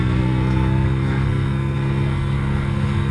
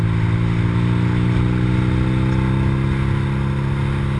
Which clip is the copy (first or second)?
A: first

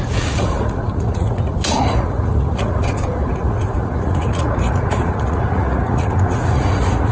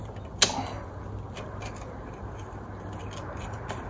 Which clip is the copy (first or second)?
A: first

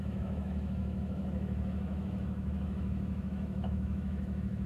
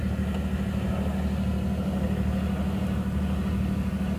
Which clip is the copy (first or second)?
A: first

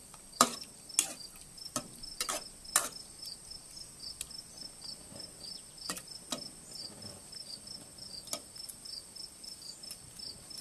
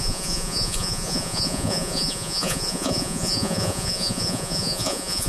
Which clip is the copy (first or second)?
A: second